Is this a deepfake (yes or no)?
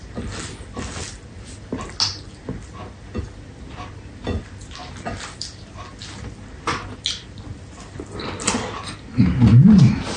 no